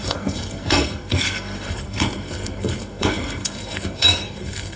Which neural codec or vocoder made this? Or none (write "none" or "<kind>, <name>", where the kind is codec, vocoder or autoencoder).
codec, SNAC